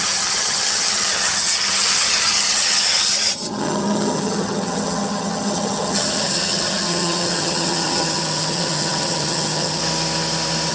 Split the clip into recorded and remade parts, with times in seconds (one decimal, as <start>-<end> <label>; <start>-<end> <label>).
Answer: 0.0-9.8 remade; 9.8-10.7 recorded